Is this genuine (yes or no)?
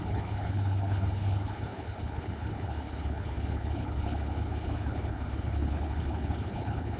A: no